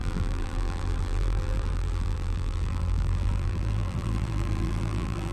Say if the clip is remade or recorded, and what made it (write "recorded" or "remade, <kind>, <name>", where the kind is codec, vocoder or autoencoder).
remade, vocoder, BigVGAN v2